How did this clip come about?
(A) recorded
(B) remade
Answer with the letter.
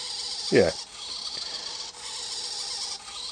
A